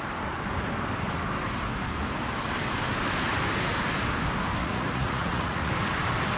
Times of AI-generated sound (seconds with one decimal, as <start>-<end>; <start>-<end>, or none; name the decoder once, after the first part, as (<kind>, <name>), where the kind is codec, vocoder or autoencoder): 4.6-5.7 (vocoder, Vocos)